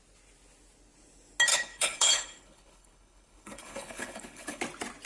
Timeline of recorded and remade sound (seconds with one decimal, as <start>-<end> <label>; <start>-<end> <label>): 0.0-1.5 recorded; 1.5-4.6 remade; 4.6-5.1 recorded